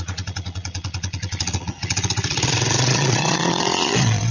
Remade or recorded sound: remade